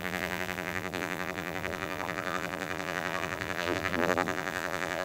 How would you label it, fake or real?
fake